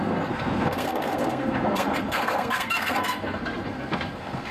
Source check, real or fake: fake